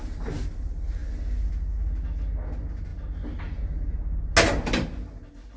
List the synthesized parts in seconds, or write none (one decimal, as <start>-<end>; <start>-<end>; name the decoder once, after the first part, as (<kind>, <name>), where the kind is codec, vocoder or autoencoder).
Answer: none